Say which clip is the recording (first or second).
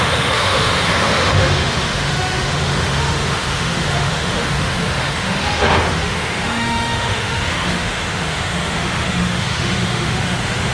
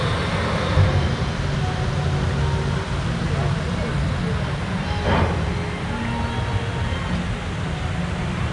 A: second